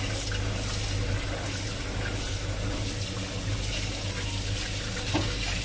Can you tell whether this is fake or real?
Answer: real